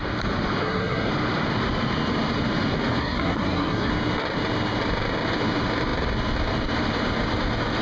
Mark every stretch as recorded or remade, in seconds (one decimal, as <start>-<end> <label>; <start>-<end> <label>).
0.0-0.6 recorded; 0.6-1.1 remade; 1.1-3.0 recorded; 3.0-3.9 remade; 3.9-7.8 recorded